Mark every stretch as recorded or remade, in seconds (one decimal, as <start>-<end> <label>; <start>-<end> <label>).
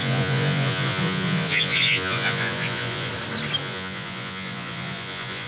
0.0-3.1 remade; 3.1-3.6 recorded; 3.6-5.5 remade